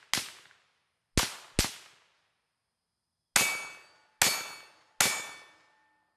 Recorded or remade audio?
recorded